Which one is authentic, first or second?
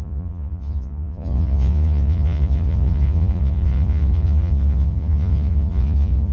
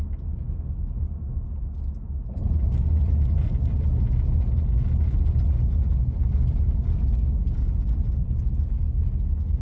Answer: second